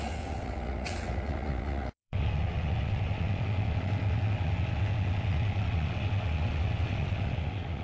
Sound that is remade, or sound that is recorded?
remade